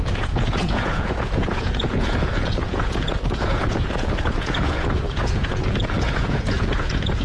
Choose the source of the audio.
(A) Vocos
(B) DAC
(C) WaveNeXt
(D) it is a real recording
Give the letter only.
A